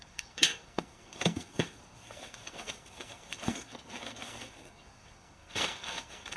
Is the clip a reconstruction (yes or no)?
yes